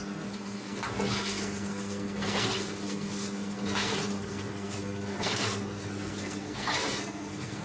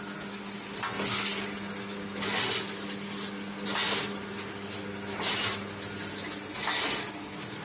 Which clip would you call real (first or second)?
second